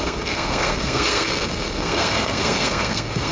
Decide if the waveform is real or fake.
fake